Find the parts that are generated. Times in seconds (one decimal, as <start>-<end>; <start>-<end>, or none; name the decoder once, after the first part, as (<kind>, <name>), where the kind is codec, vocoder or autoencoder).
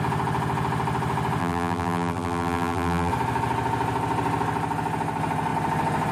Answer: 1.4-3.1 (vocoder, BigVGAN v2)